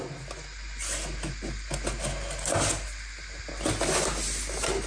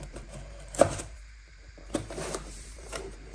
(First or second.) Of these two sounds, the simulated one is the second